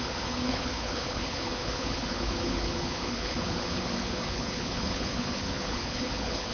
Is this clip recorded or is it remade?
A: remade